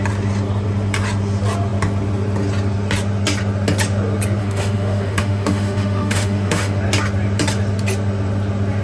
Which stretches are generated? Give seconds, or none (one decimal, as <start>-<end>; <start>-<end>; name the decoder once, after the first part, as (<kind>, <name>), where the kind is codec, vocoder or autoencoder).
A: 4.4-6.8 (autoencoder, DAC-VAE)